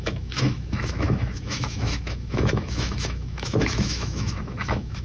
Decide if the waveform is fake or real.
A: fake